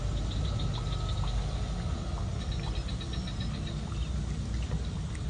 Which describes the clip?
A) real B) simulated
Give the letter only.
A